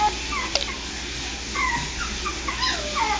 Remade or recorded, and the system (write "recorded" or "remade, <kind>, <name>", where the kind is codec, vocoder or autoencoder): recorded